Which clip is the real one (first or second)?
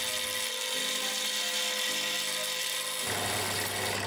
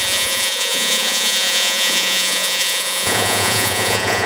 first